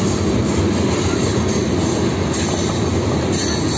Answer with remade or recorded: recorded